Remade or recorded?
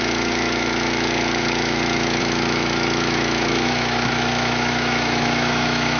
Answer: remade